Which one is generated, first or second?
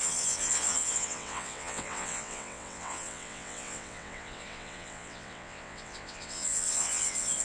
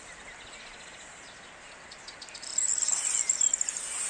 first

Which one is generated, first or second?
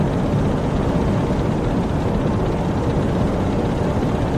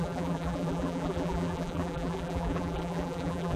second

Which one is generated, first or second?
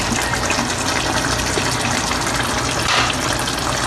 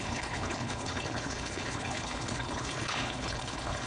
second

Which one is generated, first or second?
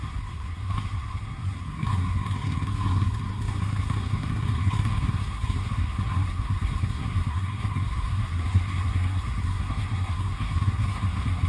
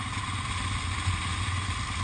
first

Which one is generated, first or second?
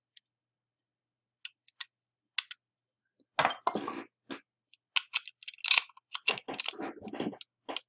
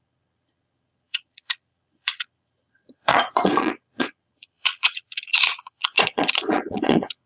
second